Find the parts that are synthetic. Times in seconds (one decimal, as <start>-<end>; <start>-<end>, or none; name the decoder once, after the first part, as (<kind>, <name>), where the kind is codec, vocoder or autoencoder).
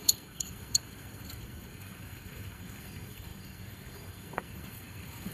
0.0-5.3 (codec, SNAC)